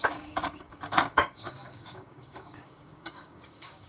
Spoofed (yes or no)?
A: yes